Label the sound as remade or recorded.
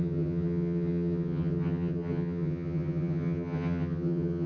remade